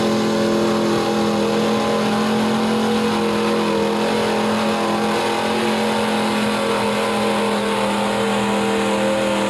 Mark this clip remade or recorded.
recorded